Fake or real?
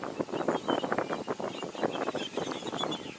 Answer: real